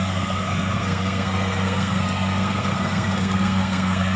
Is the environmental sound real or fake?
fake